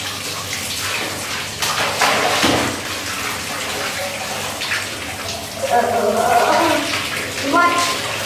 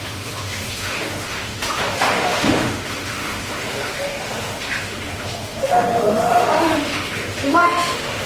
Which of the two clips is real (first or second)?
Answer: first